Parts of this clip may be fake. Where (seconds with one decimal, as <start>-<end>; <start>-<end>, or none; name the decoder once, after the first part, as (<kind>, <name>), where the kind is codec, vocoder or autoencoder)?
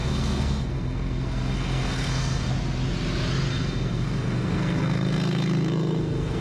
0.0-2.5 (codec, SNAC); 3.5-6.4